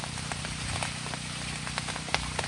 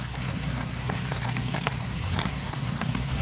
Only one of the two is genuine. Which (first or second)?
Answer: first